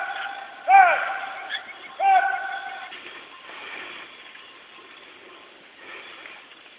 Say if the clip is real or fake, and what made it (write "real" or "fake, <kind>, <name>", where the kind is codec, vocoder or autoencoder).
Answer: real